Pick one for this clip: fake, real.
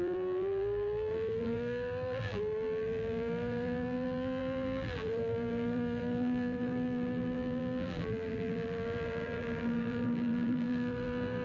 fake